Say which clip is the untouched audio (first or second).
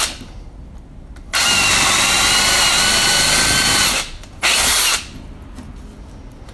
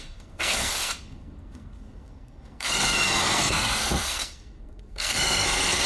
first